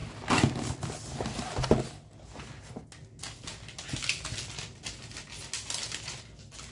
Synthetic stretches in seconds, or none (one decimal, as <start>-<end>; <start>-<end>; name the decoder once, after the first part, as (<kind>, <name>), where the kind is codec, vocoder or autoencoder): none